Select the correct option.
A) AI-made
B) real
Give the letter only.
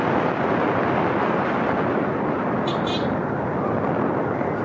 B